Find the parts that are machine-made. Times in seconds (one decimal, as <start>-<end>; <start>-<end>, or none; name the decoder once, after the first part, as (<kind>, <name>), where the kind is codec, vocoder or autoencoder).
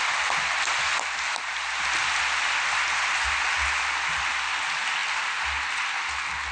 0.0-2.0 (vocoder, BigVGAN v2); 4.3-6.5